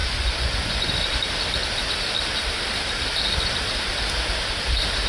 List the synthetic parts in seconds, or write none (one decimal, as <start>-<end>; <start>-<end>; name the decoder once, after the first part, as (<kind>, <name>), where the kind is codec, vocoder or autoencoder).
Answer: 0.0-0.9 (vocoder, Vocos)